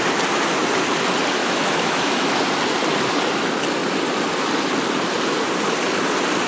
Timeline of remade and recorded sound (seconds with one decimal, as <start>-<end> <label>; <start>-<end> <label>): 0.0-1.4 recorded; 1.4-2.4 remade; 2.4-6.5 recorded